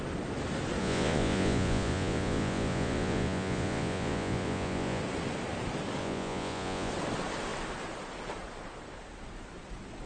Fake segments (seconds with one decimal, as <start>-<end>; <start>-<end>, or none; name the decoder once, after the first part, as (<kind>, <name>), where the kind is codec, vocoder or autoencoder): 0.8-5.0 (vocoder, Vocos); 6.0-6.9